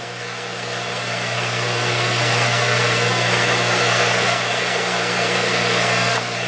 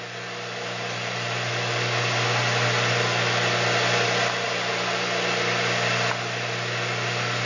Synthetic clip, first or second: first